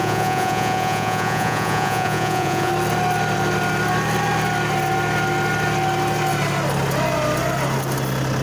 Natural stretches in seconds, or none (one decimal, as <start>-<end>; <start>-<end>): 2.7-8.4